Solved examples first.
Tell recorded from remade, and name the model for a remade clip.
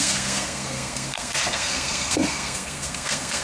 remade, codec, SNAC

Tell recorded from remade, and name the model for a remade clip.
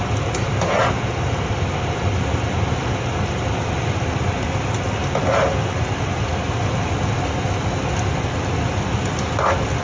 recorded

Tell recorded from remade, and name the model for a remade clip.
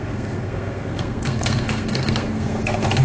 remade, codec, SNAC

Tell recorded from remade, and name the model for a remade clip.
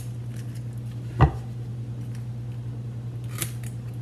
recorded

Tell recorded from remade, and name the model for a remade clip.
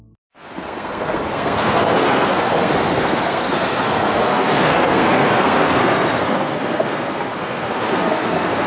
remade, codec, SNAC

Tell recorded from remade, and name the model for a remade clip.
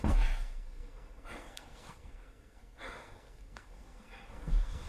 remade, codec, SNAC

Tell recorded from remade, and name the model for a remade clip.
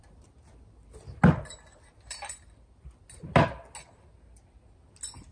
recorded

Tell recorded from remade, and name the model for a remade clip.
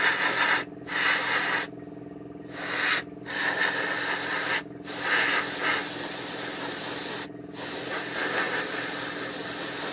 recorded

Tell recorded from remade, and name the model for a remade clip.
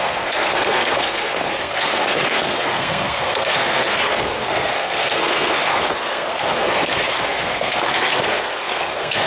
remade, codec, SNAC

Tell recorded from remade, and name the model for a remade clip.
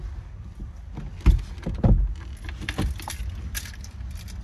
recorded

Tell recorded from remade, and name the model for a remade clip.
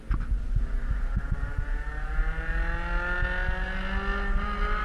recorded